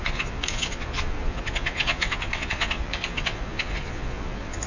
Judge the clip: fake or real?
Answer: fake